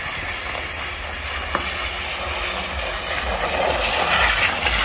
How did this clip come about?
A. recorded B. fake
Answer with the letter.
A